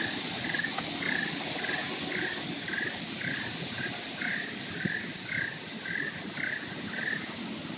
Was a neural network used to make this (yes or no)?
no